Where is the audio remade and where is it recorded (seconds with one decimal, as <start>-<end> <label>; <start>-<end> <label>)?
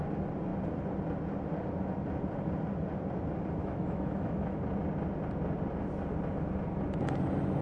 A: 0.0-3.6 recorded; 3.6-4.6 remade; 4.6-7.6 recorded